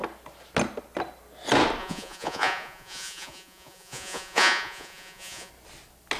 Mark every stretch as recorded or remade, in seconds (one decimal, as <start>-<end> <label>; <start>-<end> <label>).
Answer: 0.0-1.8 recorded; 1.8-5.5 remade; 5.5-6.2 recorded